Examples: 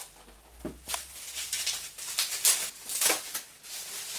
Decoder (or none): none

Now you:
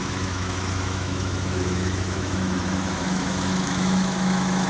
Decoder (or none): autoencoder, DAC-VAE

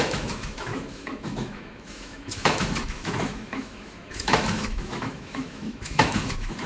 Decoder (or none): autoencoder, DAC-VAE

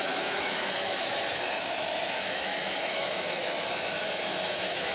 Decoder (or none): autoencoder, DAC-VAE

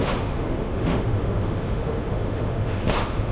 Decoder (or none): autoencoder, DAC-VAE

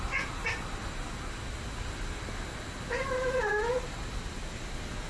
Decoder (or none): none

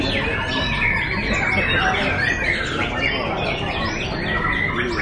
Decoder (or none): none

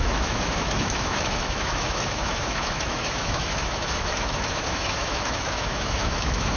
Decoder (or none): autoencoder, DAC-VAE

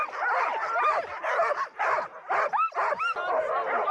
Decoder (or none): none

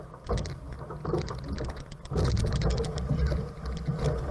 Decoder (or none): none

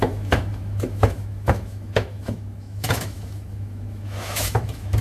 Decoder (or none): autoencoder, DAC-VAE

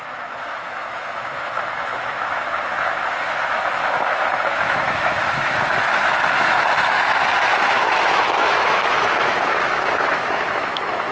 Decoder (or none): autoencoder, DAC-VAE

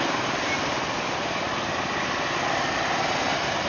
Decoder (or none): none